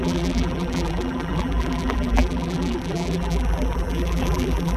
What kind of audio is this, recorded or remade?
remade